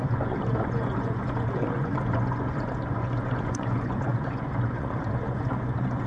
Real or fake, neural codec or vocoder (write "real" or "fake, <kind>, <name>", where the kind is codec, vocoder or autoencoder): fake, vocoder, Vocos